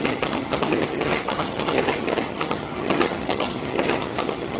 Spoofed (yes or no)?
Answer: yes